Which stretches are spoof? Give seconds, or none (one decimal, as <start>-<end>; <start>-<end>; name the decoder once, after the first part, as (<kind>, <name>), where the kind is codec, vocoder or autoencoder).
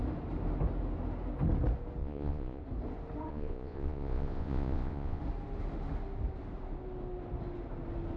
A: 2.0-2.6 (vocoder, Vocos); 3.3-5.2